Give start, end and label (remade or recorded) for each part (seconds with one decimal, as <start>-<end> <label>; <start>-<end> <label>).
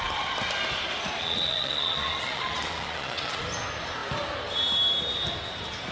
0.0-1.2 recorded; 1.2-3.4 remade; 3.4-5.9 recorded